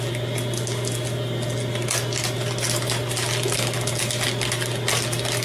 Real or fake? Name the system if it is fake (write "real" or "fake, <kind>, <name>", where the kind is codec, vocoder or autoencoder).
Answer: real